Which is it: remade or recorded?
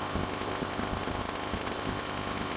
remade